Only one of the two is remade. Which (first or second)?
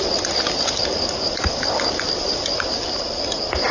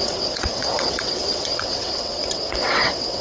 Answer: second